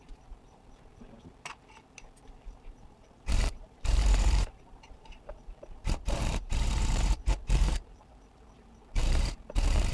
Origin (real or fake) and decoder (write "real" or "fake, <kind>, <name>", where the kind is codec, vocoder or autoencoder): fake, vocoder, BigVGAN v2